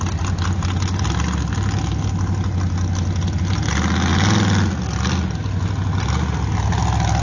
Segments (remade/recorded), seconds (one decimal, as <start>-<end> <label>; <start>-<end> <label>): 0.0-7.2 recorded